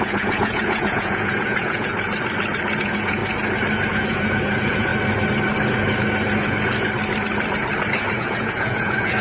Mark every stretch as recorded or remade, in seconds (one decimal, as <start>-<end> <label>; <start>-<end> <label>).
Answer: 0.0-1.9 remade; 1.9-2.8 recorded; 2.8-3.2 remade; 3.2-3.9 recorded; 3.9-4.9 remade; 4.9-8.2 recorded; 8.2-9.2 remade